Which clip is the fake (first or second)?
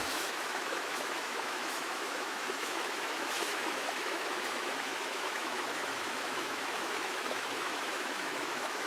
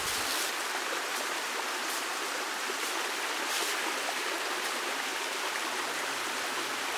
first